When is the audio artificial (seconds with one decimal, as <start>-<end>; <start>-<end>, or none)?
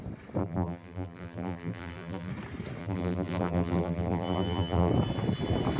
0.4-2.3; 2.8-4.9